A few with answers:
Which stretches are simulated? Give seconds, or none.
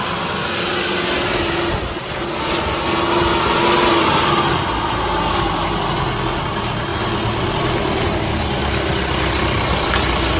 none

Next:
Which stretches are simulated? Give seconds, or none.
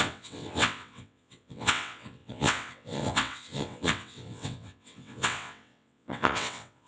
0.0-6.9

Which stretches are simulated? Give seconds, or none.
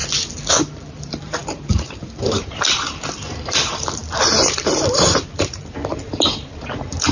0.5-7.1